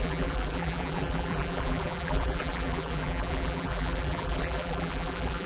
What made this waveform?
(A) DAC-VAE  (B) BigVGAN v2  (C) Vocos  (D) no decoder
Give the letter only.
B